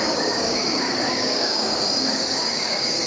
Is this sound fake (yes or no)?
yes